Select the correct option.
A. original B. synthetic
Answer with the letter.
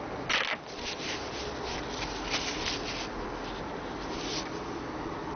A